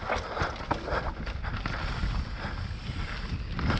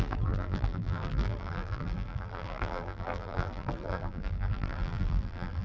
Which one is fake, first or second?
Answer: second